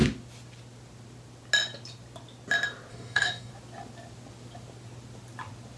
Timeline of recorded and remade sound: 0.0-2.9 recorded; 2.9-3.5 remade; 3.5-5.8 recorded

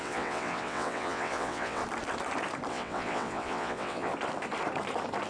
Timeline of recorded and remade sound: 0.0-1.8 remade; 1.8-2.7 recorded; 2.7-4.1 remade; 4.1-5.3 recorded

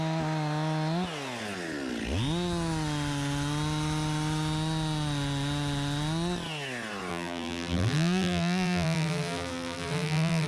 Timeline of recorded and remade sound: 0.0-7.1 recorded; 7.1-10.5 remade

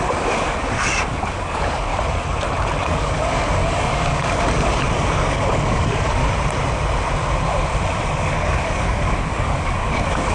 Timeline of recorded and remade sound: 0.0-1.9 remade; 1.9-2.8 recorded; 2.8-6.2 remade; 6.2-8.2 recorded; 8.2-10.3 remade

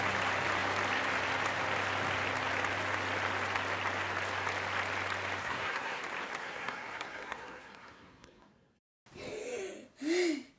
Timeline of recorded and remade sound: 0.0-5.4 recorded; 5.4-6.0 remade; 6.0-6.4 recorded; 6.4-9.0 remade; 9.0-10.6 recorded

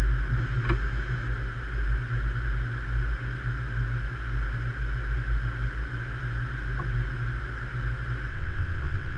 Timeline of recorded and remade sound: 0.0-8.3 recorded; 8.3-9.2 remade

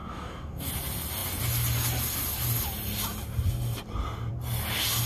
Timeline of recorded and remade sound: 0.0-0.7 remade; 0.7-5.1 recorded

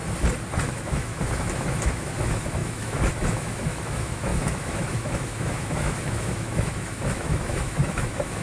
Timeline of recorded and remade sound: 0.0-0.6 recorded; 0.6-8.4 remade